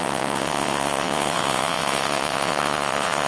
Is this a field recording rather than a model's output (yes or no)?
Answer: no